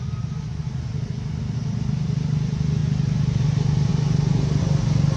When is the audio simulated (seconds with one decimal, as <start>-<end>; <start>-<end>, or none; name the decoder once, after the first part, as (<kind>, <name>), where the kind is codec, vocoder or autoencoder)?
none